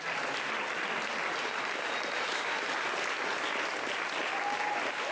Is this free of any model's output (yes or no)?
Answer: yes